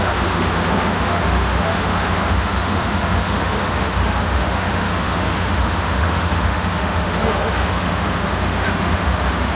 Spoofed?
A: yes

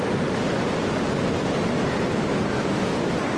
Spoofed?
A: no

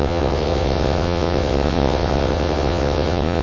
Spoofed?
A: yes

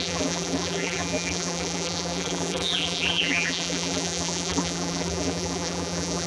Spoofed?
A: yes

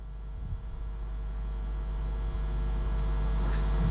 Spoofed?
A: no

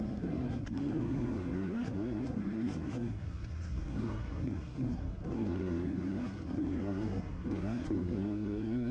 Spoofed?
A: yes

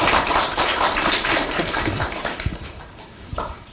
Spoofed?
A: yes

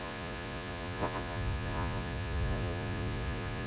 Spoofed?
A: yes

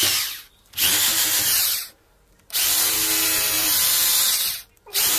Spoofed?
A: yes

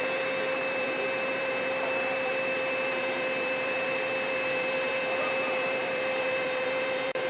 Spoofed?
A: yes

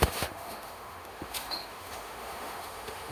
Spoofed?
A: yes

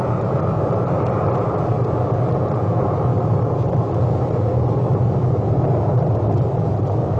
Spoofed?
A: no